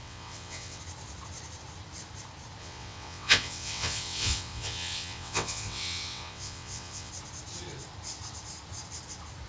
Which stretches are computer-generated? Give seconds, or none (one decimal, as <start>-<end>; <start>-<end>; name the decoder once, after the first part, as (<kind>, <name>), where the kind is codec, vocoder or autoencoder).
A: 0.0-0.8 (vocoder, WaveNeXt); 2.6-7.1

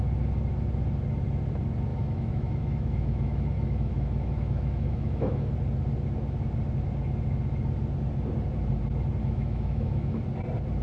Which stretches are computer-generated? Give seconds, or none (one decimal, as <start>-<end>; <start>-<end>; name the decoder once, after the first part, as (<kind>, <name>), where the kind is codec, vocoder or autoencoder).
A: 1.9-5.5 (autoencoder, DAC-VAE); 9.2-10.2

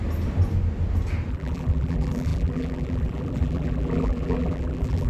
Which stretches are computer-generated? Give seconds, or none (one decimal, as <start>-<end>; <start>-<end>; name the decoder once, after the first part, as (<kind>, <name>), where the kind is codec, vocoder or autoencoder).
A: 1.3-5.1 (vocoder, BigVGAN v2)

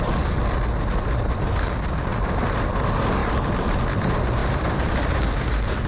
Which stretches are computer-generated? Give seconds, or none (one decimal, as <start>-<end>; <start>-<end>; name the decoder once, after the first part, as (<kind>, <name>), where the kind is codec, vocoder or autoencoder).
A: 3.2-4.0 (vocoder, BigVGAN v2); 4.4-5.1